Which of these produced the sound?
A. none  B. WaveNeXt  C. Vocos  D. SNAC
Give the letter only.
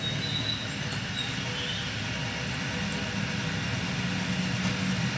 A